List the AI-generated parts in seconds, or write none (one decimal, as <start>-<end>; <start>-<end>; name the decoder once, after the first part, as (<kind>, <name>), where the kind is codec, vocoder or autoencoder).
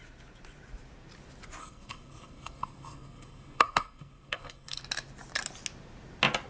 1.6-4.8 (codec, SNAC)